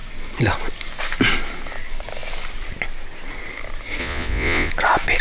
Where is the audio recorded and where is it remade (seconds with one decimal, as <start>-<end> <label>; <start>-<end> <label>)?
0.0-4.0 recorded; 4.0-4.7 remade; 4.7-5.2 recorded